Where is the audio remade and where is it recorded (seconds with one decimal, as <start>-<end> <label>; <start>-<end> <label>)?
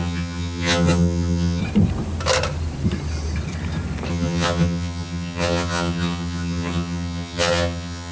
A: 0.0-1.6 remade; 1.6-4.1 recorded; 4.1-8.1 remade